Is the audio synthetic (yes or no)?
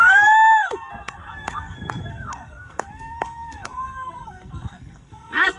yes